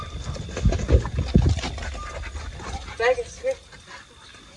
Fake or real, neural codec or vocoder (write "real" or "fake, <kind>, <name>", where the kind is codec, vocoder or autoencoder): real